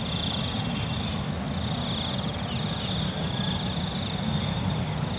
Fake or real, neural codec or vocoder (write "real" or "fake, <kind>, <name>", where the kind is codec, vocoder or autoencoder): real